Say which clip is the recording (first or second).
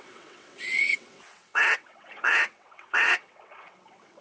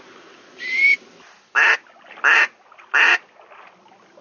second